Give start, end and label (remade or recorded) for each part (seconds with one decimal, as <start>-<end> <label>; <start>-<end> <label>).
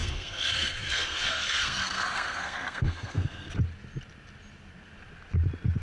0.0-3.5 remade; 3.5-5.8 recorded